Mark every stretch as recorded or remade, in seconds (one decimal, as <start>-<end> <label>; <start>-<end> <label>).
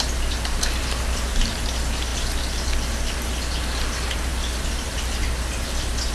0.0-6.1 recorded